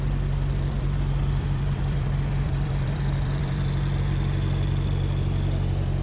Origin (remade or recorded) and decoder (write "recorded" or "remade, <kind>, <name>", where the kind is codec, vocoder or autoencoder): remade, vocoder, BigVGAN v2